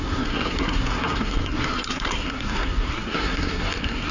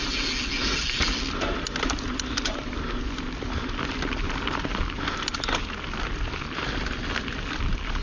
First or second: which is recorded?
second